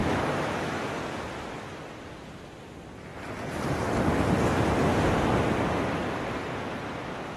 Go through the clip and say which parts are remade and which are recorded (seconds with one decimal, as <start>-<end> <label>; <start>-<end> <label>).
0.0-1.0 remade; 1.0-7.4 recorded